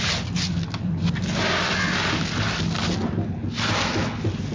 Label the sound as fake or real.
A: real